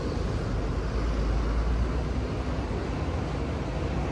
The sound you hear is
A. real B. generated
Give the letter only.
A